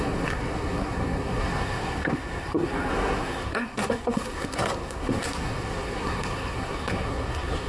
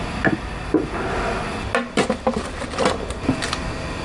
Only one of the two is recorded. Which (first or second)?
second